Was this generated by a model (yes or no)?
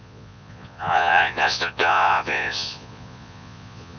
yes